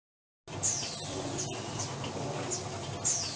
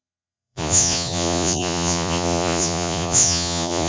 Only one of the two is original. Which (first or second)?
first